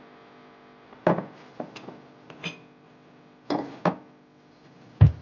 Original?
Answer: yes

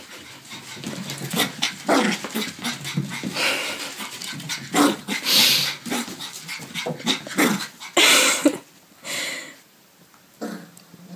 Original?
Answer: yes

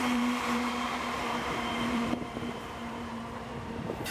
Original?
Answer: no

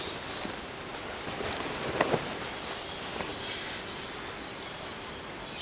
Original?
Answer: yes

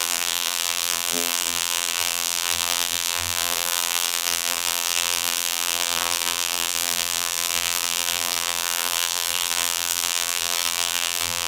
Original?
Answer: no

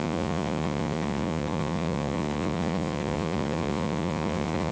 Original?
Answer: no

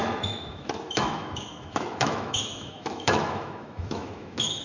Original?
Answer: no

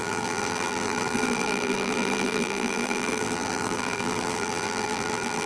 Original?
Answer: no